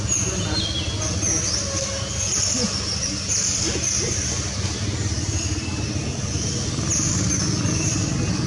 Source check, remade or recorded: recorded